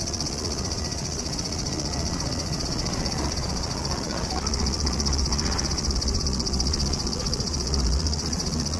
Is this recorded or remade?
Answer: remade